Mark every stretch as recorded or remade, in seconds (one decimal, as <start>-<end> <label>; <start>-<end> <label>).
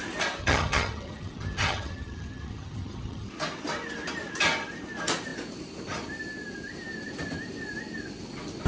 0.0-0.4 recorded; 0.4-3.3 remade; 3.3-8.7 recorded